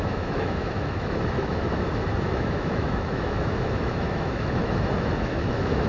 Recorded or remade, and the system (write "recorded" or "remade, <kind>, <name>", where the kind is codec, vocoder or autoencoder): remade, autoencoder, DAC-VAE